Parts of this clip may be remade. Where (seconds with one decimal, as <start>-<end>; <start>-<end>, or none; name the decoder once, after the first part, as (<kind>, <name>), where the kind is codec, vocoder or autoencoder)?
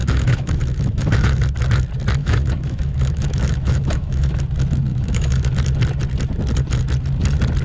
0.0-1.4 (autoencoder, DAC-VAE); 2.2-4.4; 4.9-5.5